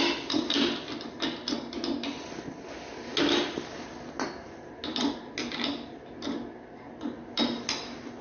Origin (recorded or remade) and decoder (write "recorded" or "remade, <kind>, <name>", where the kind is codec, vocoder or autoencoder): recorded